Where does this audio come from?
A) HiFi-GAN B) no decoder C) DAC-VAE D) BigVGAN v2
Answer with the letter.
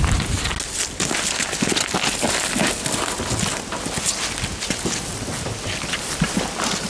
B